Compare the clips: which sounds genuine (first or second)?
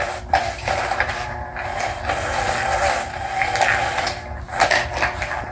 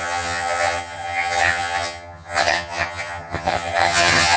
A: first